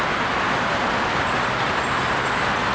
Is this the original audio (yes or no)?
yes